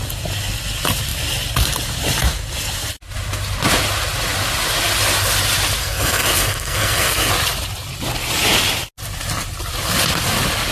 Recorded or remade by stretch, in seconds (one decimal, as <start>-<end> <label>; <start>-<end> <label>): 0.0-5.8 recorded; 5.8-7.3 remade; 7.3-10.7 recorded